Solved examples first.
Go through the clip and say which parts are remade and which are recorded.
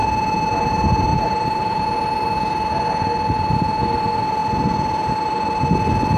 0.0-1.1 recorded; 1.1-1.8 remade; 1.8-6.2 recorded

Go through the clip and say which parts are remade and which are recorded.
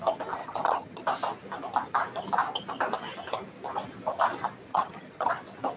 0.0-0.4 recorded; 0.4-1.0 remade; 1.0-4.7 recorded; 4.7-5.3 remade; 5.3-5.8 recorded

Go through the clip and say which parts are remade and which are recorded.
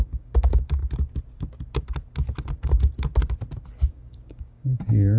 0.0-0.8 remade; 0.8-3.9 recorded; 3.9-5.2 remade